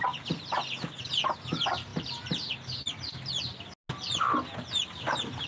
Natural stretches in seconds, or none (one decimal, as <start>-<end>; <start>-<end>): 0.0-5.5